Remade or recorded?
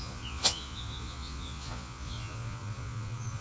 remade